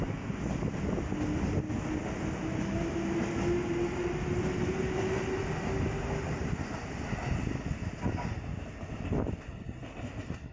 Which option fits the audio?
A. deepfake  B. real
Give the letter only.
B